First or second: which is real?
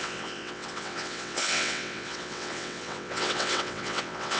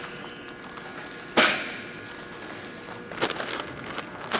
second